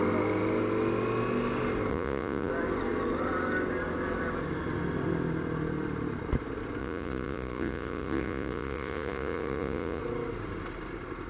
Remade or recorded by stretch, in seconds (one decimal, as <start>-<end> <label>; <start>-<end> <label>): 0.0-1.9 recorded; 1.9-2.5 remade; 2.5-6.8 recorded; 6.8-10.0 remade; 10.0-11.3 recorded

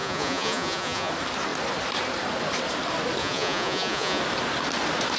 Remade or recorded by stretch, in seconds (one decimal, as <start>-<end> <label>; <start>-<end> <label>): 0.0-1.1 remade; 1.1-3.2 recorded; 3.2-4.2 remade; 4.2-5.2 recorded

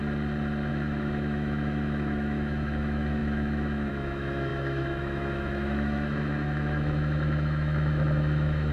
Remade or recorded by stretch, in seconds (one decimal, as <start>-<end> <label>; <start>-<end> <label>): 0.0-0.7 recorded; 0.7-8.7 remade